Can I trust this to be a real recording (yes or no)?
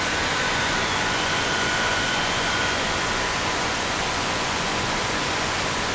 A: no